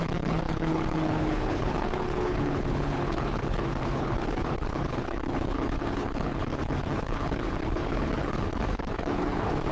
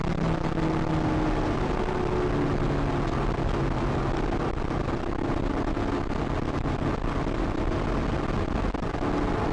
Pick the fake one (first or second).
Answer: first